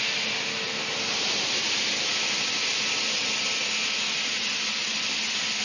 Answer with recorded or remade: recorded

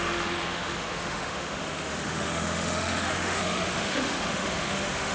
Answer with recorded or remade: remade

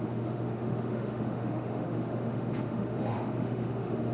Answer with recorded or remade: remade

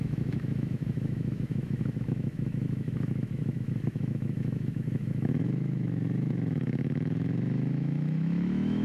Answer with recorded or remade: remade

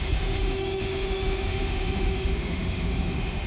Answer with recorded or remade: remade